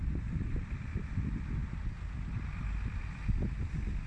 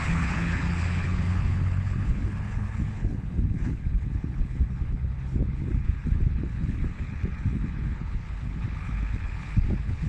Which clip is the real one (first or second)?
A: first